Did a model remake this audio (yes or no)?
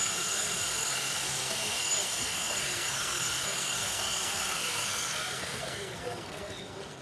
yes